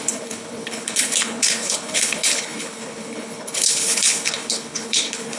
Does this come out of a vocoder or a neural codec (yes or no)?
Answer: yes